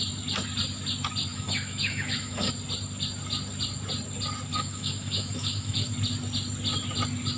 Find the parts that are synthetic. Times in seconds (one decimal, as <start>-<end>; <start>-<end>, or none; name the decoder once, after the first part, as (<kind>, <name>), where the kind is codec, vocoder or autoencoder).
1.3-2.5 (autoencoder, DAC-VAE); 4.5-5.9